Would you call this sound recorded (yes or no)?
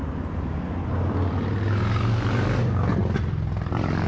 yes